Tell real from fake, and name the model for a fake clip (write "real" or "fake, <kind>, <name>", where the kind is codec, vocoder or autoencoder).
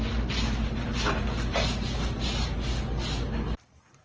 real